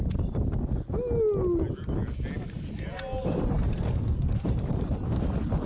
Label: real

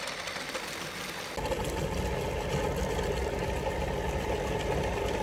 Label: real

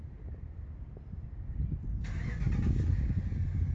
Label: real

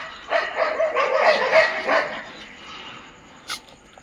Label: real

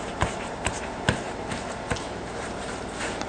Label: fake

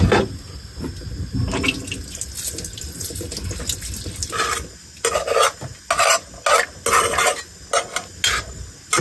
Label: real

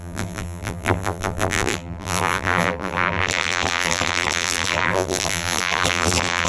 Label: fake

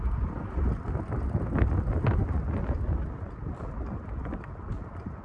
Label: real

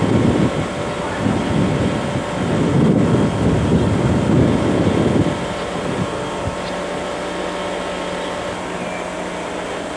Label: real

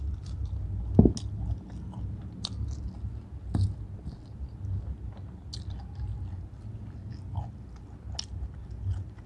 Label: real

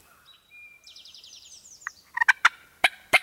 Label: fake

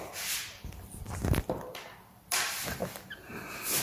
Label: fake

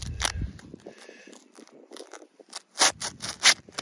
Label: fake